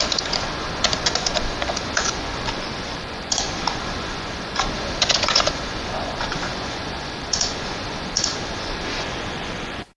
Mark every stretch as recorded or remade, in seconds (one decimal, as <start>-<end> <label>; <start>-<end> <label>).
0.0-10.0 remade